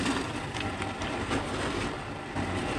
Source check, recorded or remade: recorded